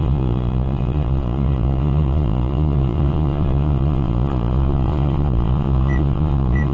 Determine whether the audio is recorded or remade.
remade